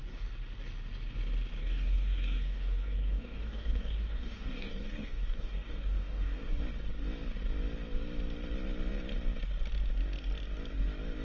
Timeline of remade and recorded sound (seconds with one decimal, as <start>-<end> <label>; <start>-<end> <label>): 0.0-1.6 recorded; 1.6-6.6 remade; 6.6-11.2 recorded